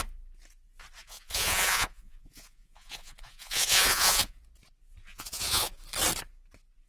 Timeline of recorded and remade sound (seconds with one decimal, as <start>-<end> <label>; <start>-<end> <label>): 0.0-1.0 recorded; 1.0-4.4 remade; 4.4-5.0 recorded; 5.0-5.8 remade; 5.8-6.9 recorded